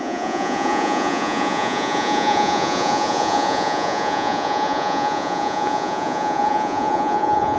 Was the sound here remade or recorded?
remade